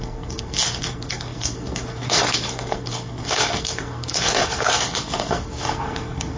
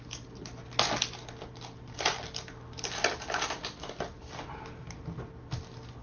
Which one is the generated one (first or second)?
first